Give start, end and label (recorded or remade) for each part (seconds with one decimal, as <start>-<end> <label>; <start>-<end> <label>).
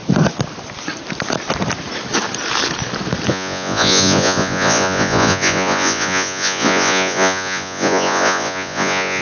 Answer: 0.0-3.3 recorded; 3.3-9.2 remade